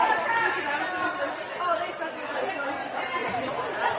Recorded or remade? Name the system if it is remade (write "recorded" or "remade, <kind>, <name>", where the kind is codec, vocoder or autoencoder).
remade, vocoder, BigVGAN v2